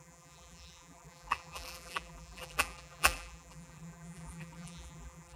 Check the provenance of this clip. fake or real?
fake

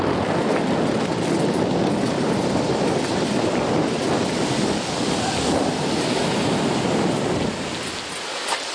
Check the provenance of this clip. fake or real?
real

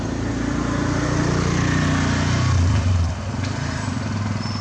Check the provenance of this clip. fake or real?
real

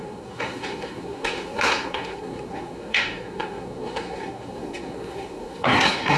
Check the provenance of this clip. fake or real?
fake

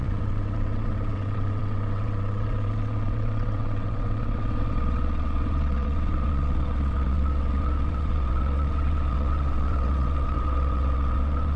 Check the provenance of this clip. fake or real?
fake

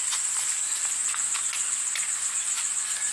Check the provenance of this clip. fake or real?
real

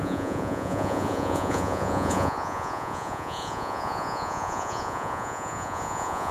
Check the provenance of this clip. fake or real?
fake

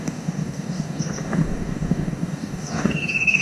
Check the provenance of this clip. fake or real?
fake